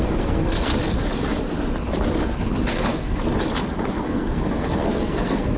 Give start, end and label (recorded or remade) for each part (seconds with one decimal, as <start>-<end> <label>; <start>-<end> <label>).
0.0-0.7 remade; 0.7-2.7 recorded; 2.7-3.2 remade; 3.2-3.9 recorded; 3.9-5.6 remade